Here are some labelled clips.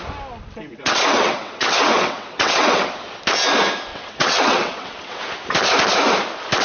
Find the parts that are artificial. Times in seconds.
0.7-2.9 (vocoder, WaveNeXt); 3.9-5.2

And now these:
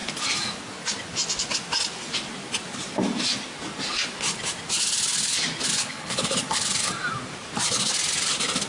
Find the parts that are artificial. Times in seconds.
5.7-6.9 (codec, HILCodec)

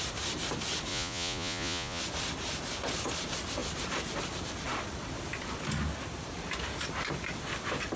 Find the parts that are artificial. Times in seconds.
0.9-2.0 (vocoder, Vocos)

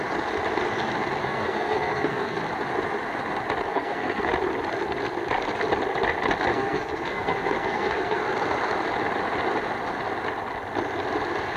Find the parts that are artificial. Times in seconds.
1.2-2.4 (codec, SNAC); 3.7-4.3; 6.5-8.2